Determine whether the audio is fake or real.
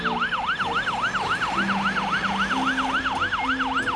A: real